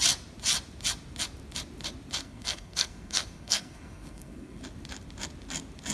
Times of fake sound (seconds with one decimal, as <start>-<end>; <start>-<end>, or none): 2.2-4.6